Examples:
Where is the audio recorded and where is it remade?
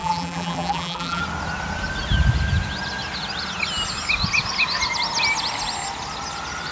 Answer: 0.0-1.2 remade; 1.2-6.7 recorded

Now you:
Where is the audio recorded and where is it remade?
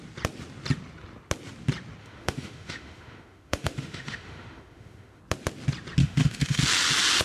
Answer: 0.0-2.0 recorded; 2.0-5.2 remade; 5.2-6.0 recorded; 6.0-6.6 remade; 6.6-7.2 recorded